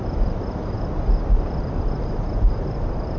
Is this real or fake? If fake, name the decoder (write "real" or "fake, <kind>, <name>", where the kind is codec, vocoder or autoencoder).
real